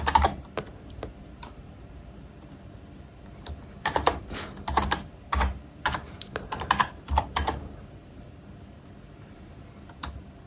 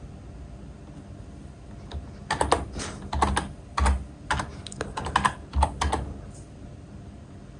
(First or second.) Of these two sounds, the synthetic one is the first